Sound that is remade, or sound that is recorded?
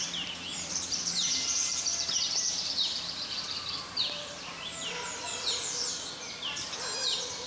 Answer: remade